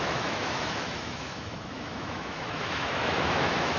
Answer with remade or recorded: remade